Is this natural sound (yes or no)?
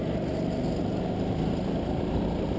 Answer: yes